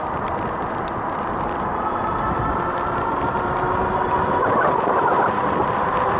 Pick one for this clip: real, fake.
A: real